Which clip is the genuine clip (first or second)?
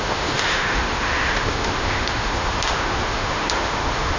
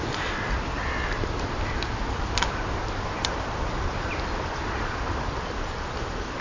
second